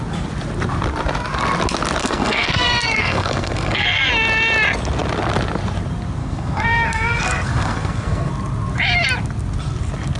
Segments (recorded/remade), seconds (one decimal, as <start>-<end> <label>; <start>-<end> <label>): 0.0-2.0 recorded; 2.0-4.1 remade; 4.1-6.2 recorded; 6.2-8.3 remade; 8.3-10.2 recorded